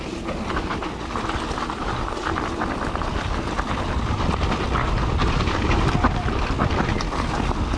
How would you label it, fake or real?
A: real